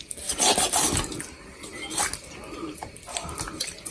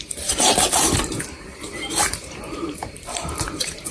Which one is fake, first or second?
second